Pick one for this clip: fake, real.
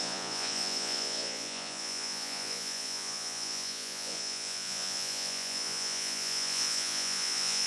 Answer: fake